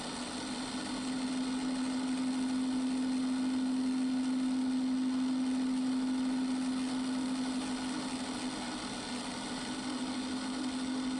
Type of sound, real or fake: real